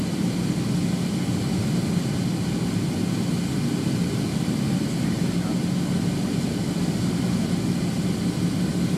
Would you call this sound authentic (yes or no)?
yes